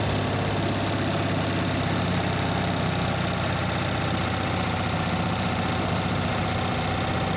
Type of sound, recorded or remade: recorded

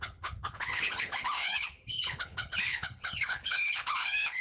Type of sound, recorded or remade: remade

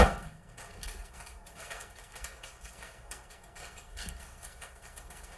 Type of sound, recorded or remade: remade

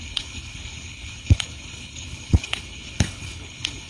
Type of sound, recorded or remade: remade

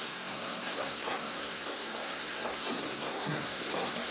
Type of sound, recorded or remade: remade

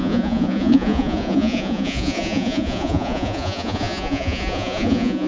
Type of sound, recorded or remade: remade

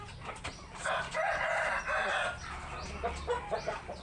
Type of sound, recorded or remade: recorded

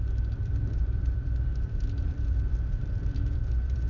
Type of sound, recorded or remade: remade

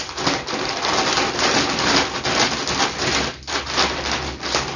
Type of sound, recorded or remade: recorded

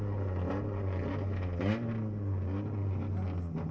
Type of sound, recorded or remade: recorded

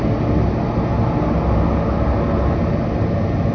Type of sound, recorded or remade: recorded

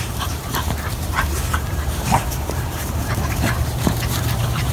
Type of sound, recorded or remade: remade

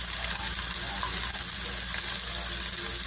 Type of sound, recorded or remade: recorded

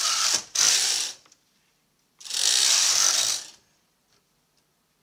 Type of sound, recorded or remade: remade